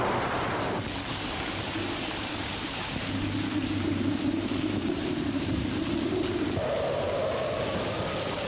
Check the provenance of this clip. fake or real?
fake